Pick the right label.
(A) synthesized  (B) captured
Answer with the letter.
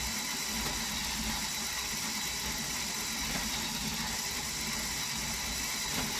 B